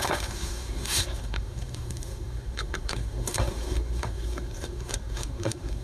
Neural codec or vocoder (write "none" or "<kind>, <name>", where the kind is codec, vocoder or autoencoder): codec, SNAC